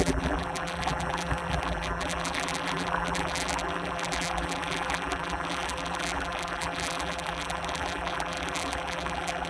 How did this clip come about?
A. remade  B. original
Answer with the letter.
A